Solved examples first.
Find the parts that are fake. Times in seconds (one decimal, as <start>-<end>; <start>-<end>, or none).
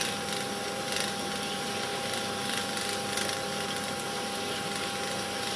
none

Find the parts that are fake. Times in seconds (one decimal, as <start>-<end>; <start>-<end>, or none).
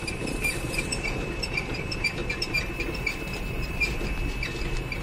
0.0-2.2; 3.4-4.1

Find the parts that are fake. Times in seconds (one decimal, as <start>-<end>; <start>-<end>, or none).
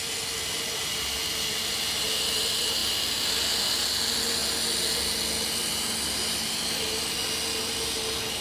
none